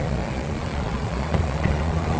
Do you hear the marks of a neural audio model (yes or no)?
yes